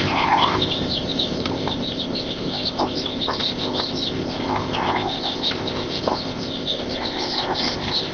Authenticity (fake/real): fake